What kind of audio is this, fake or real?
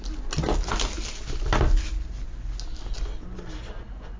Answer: real